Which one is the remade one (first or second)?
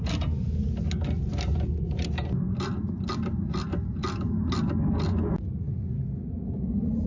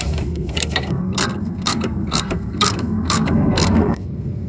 second